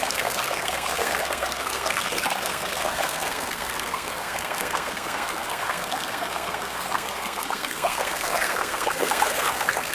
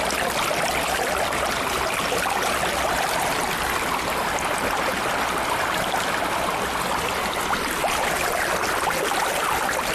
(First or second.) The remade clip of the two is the first